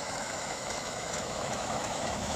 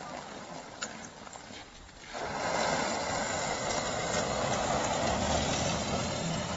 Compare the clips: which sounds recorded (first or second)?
second